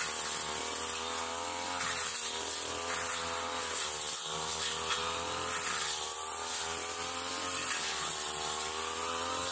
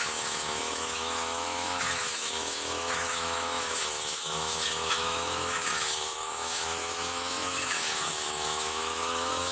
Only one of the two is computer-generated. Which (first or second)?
second